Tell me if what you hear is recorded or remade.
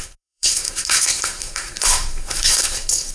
remade